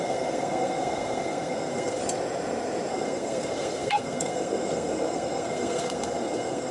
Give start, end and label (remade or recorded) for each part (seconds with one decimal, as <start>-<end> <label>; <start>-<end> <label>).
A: 0.0-2.0 remade; 2.0-2.9 recorded; 2.9-6.7 remade